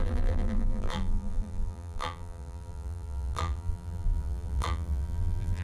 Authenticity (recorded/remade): remade